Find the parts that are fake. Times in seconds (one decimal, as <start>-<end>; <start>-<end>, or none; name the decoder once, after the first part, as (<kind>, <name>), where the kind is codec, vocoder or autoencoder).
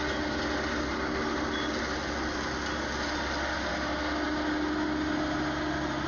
none